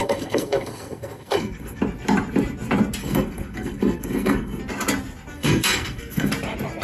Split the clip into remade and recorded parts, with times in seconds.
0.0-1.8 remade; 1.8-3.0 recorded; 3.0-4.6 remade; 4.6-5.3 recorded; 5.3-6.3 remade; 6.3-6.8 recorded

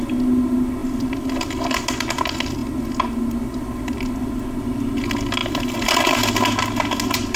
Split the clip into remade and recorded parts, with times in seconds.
0.0-0.8 recorded; 0.8-1.3 remade; 1.3-5.4 recorded; 5.4-6.3 remade; 6.3-7.4 recorded

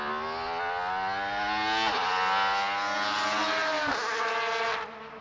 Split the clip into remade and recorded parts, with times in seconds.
0.0-5.2 recorded

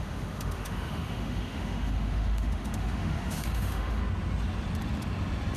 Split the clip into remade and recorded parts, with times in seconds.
0.0-4.0 remade; 4.0-5.6 recorded

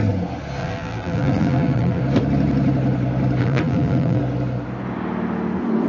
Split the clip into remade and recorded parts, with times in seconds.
0.0-0.6 recorded; 0.6-2.0 remade; 2.0-3.4 recorded; 3.4-4.2 remade; 4.2-5.9 recorded